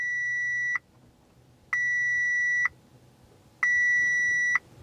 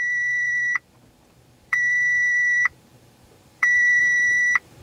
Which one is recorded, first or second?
first